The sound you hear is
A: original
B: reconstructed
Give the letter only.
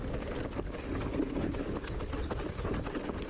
A